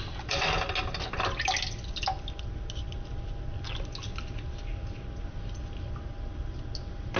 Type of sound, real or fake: real